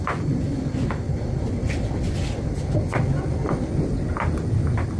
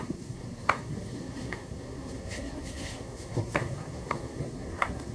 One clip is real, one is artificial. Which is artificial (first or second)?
second